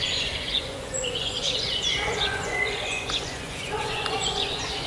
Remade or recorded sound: remade